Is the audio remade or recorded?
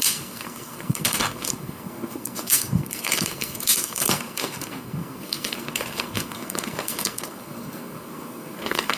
remade